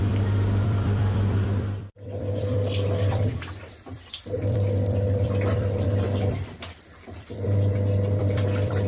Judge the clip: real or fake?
fake